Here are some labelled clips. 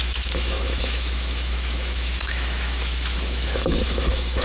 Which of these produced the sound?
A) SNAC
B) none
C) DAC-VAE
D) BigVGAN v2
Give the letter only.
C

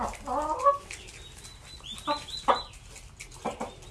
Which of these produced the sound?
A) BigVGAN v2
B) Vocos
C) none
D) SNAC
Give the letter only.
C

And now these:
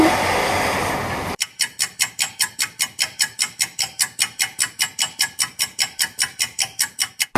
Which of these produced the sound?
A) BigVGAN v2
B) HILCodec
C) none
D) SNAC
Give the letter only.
A